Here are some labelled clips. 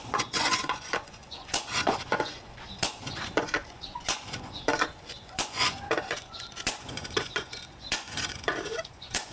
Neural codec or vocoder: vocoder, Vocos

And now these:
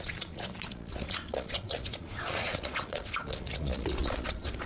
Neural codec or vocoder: vocoder, Vocos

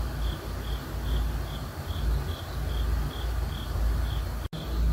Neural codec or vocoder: none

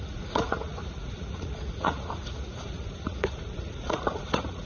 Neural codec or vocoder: vocoder, Vocos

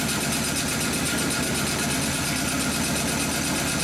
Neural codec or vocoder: none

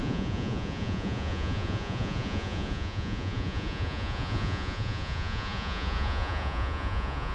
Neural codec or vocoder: vocoder, Vocos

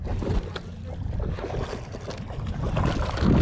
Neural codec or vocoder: none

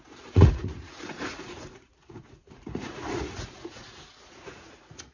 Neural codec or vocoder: vocoder, Vocos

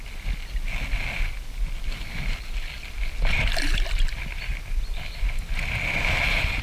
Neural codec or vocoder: none